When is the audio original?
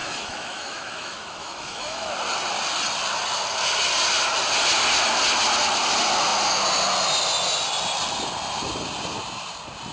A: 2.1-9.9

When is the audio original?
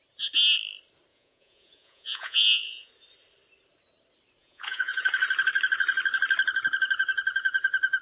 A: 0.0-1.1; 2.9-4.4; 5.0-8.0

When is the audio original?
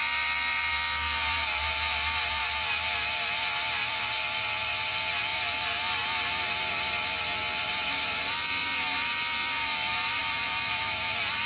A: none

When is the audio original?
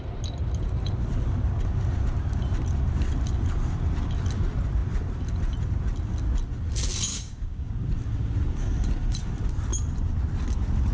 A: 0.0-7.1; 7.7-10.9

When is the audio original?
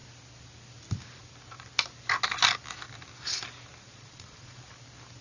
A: 0.0-3.9; 4.6-5.2